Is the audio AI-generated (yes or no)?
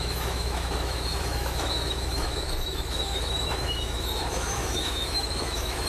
yes